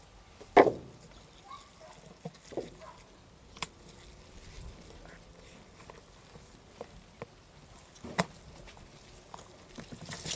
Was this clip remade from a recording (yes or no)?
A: no